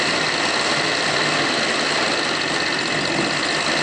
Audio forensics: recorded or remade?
recorded